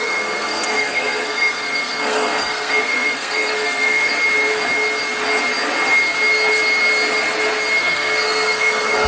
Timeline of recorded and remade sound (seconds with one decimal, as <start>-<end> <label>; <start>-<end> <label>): 0.0-4.1 remade; 4.1-7.8 recorded; 7.8-9.1 remade